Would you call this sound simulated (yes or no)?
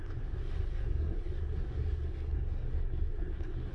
yes